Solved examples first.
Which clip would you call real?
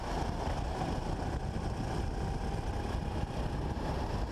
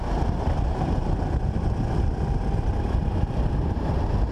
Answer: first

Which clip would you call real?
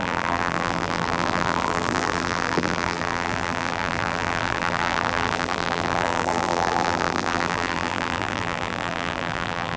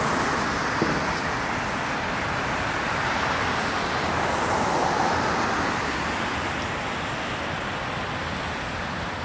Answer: second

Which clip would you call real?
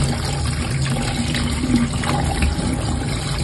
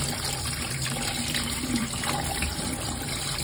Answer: first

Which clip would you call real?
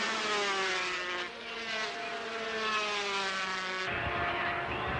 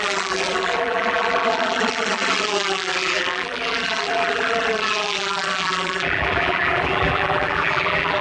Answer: first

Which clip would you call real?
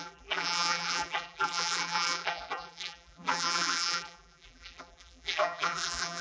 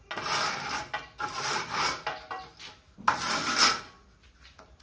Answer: second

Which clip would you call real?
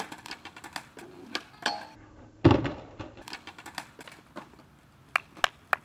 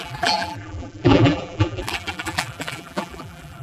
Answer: first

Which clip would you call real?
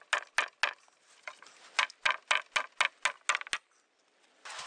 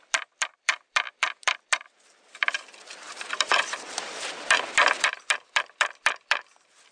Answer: first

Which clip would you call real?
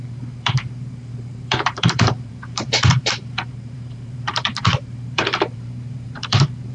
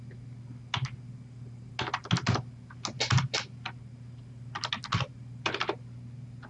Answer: second